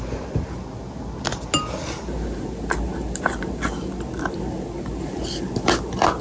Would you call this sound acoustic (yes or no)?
yes